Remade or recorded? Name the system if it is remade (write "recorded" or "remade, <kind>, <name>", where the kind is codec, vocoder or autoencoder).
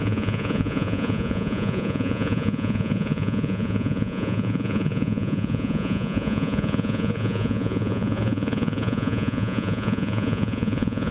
remade, vocoder, Vocos